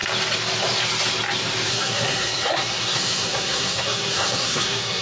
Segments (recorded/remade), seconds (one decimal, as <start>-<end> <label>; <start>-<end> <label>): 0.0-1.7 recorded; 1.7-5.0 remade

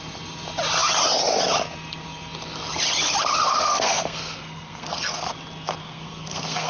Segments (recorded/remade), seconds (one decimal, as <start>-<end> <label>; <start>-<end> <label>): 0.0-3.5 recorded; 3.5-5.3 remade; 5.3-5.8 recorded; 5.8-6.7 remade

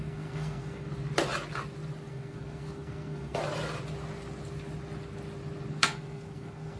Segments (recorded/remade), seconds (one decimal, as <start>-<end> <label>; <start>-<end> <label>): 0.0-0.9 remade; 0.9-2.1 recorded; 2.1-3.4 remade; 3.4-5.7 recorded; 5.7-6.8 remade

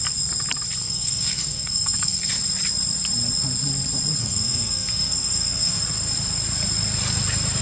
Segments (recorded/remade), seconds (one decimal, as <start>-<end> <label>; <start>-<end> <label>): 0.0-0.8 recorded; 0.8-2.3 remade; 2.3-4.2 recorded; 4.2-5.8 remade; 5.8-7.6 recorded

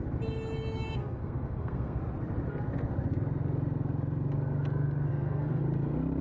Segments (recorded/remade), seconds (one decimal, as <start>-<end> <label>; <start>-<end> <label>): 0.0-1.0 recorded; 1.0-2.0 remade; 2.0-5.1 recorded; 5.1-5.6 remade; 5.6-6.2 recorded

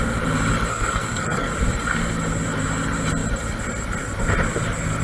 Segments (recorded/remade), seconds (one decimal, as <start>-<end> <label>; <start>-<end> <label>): 0.0-0.7 recorded; 0.7-1.5 remade; 1.5-5.0 recorded